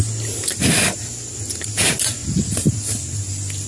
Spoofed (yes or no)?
no